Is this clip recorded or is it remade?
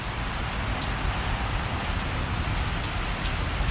recorded